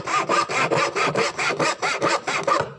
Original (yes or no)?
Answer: yes